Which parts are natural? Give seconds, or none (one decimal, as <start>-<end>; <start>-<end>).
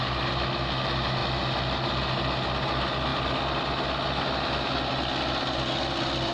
0.0-6.3